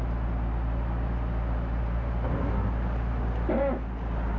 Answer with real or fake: real